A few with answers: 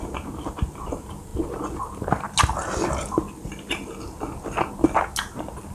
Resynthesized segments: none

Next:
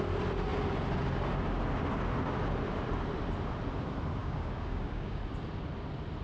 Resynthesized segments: 4.2-5.2 (codec, DAC)

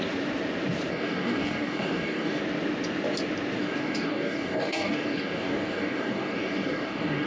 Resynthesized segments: 0.9-2.4 (codec, DAC); 3.6-7.3